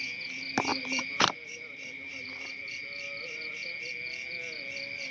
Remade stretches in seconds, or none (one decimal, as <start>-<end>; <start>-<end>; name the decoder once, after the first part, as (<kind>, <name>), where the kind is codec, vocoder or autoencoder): 0.7-3.8 (vocoder, BigVGAN v2)